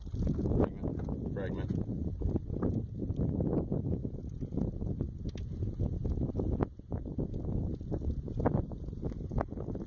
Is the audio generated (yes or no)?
no